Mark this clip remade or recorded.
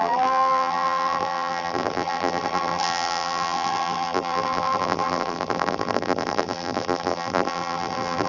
remade